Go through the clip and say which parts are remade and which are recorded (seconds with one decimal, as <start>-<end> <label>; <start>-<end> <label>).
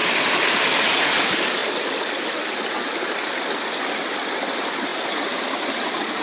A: 0.0-1.2 recorded; 1.2-4.9 remade; 4.9-6.2 recorded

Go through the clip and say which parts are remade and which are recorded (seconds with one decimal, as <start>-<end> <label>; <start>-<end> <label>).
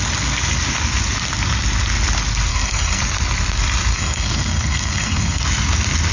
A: 0.0-2.5 recorded; 2.5-3.0 remade; 3.0-3.9 recorded; 3.9-5.4 remade; 5.4-6.1 recorded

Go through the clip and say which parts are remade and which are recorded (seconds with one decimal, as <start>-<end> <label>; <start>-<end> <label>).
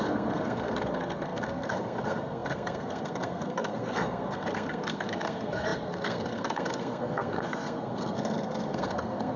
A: 0.0-9.4 remade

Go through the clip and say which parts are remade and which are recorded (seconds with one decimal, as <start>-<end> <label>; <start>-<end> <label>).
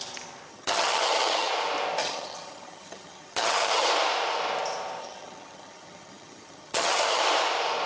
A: 0.0-0.5 recorded; 0.5-1.5 remade; 1.5-2.0 recorded; 2.0-3.9 remade; 3.9-5.0 recorded; 5.0-7.2 remade; 7.2-7.9 recorded